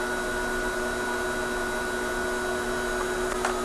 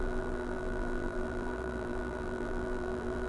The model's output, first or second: second